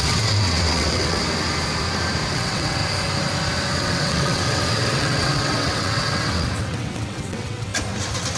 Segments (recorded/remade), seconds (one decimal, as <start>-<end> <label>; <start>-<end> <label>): 0.0-1.2 remade; 1.2-2.3 recorded; 2.3-2.8 remade; 2.8-3.8 recorded; 3.8-7.7 remade; 7.7-8.4 recorded